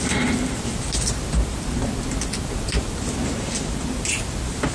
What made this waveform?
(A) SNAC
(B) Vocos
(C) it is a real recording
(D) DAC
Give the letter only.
C